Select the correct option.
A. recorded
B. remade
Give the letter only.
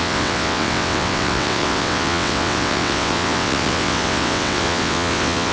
B